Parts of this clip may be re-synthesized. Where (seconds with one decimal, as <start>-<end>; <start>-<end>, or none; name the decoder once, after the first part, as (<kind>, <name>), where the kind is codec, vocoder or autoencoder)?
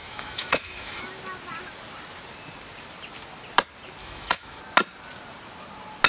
0.0-1.0 (autoencoder, DAC-VAE); 4.0-4.6